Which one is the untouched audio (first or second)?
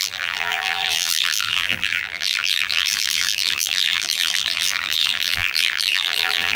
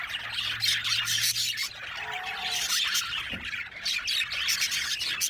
second